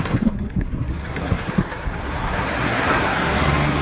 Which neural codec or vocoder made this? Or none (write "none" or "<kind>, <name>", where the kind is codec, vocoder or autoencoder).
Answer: codec, SNAC